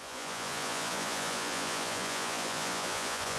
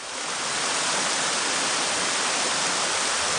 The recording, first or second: second